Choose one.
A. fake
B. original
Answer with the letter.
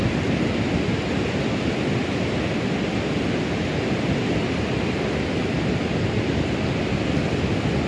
B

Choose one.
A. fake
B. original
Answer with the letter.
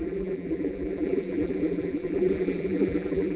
A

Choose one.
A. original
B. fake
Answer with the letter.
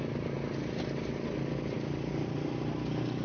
A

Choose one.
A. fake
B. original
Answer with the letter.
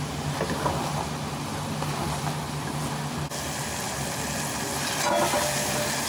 B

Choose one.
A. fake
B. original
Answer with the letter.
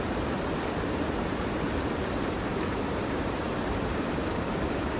A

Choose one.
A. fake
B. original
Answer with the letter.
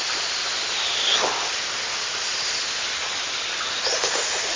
B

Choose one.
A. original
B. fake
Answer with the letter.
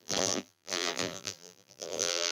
B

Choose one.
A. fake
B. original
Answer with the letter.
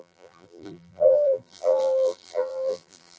A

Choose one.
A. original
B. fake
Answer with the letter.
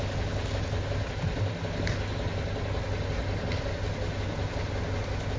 A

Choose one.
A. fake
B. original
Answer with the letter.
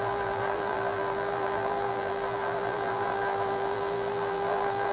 A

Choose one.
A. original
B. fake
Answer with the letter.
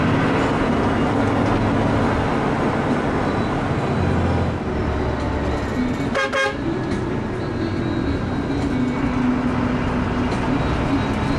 A